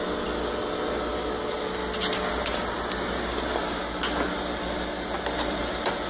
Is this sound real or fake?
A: real